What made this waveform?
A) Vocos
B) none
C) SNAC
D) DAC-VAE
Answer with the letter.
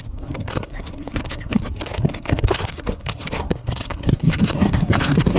C